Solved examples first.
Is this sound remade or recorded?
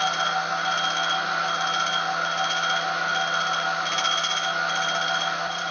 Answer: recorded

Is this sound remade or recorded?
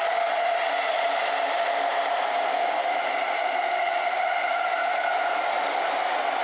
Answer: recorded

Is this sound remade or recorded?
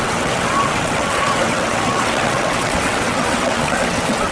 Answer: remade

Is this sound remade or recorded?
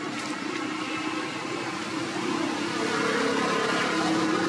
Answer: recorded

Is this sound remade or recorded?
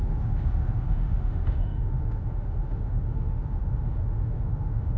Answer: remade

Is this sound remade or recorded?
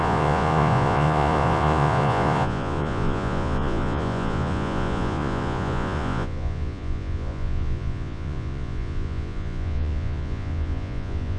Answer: remade